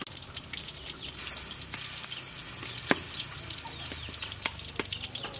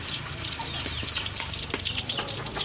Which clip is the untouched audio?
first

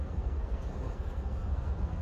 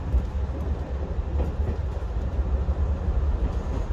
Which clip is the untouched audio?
second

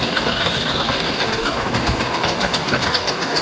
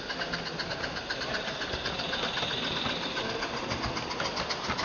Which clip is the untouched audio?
second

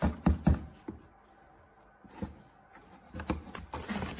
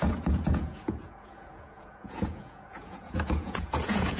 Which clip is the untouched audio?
first